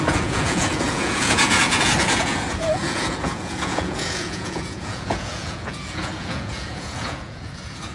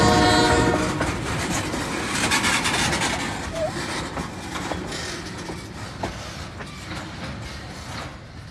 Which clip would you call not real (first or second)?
first